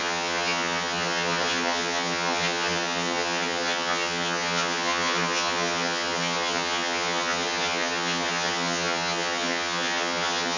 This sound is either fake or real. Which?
fake